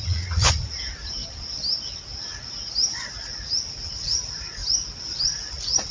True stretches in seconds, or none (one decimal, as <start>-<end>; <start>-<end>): 1.2-3.7; 4.6-5.2